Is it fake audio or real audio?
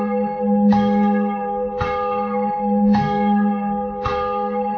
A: fake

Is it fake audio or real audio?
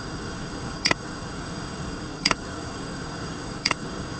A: fake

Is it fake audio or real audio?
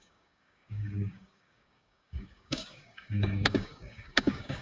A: fake